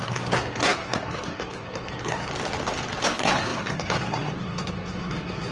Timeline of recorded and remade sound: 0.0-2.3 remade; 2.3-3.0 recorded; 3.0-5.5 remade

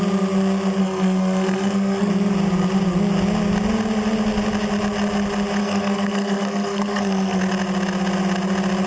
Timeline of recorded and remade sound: 0.0-0.8 recorded; 0.8-2.1 remade; 2.1-5.6 recorded; 5.6-7.4 remade; 7.4-8.9 recorded

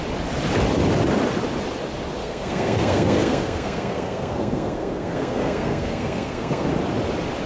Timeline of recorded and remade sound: 0.0-2.2 recorded; 2.2-6.7 remade; 6.7-7.5 recorded

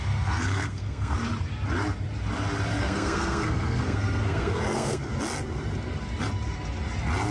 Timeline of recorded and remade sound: 0.0-1.2 remade; 1.2-2.8 recorded; 2.8-5.1 remade; 5.1-7.3 recorded

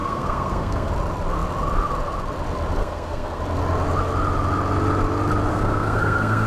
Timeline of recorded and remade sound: 0.0-0.9 remade; 0.9-2.8 recorded; 2.8-3.4 remade; 3.4-5.5 recorded; 5.5-6.5 remade

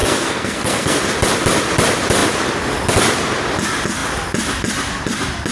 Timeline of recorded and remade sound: 0.0-1.0 remade; 1.0-5.5 recorded